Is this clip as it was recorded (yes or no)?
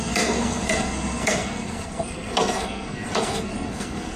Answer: no